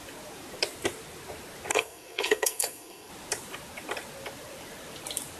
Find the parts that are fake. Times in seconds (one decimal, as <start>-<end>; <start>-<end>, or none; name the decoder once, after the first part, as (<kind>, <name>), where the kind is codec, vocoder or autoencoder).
1.7-3.1 (codec, SNAC)